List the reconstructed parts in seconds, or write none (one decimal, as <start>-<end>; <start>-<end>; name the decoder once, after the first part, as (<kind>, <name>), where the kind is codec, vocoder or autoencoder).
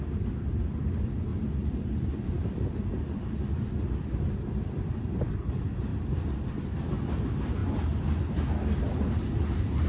1.3-5.5 (vocoder, BigVGAN v2); 5.9-6.5